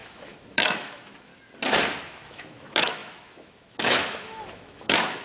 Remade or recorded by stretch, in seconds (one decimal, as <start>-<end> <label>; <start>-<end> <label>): 0.0-1.3 remade; 1.3-2.0 recorded; 2.0-5.2 remade